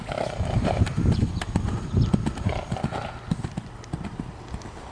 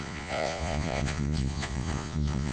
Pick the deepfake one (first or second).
second